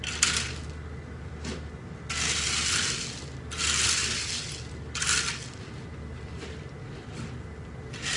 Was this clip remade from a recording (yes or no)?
no